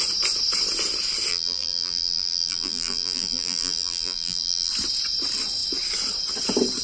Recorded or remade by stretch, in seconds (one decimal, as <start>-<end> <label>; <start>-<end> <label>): 0.0-1.3 recorded; 1.3-4.7 remade; 4.7-6.8 recorded